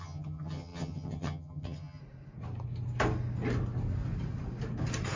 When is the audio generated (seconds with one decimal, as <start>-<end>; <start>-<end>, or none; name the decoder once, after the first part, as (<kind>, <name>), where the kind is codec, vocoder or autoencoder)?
0.0-2.0 (vocoder, HiFi-GAN)